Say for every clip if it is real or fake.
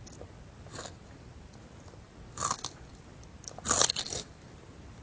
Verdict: real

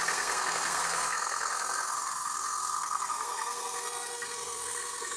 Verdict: fake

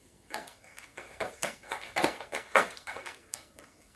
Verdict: fake